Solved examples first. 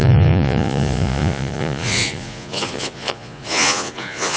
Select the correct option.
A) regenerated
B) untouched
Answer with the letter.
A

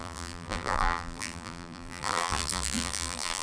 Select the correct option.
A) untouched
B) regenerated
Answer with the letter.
B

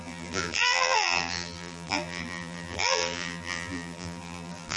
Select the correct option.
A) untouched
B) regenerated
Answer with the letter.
B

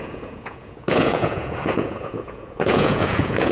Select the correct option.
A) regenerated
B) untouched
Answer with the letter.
A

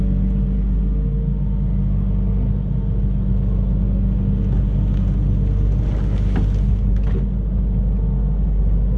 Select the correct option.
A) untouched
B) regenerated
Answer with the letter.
A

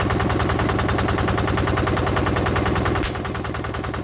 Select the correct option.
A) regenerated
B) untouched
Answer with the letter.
B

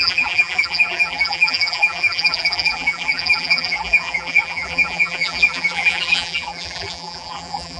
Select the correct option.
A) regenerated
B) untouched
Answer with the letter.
A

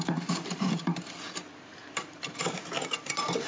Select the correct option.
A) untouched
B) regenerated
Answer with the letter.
B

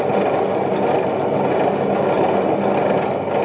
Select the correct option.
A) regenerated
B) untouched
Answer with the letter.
B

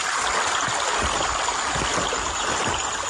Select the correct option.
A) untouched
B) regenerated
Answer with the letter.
A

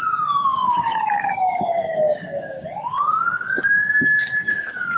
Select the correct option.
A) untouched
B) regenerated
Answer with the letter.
B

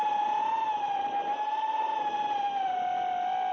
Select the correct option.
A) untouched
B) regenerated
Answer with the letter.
A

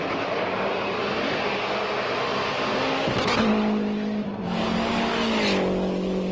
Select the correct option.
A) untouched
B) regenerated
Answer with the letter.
A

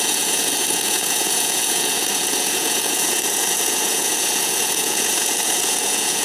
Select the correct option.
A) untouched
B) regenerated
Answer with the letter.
B